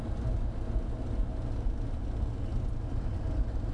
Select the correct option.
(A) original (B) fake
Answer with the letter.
A